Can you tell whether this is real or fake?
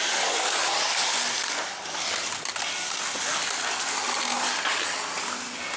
real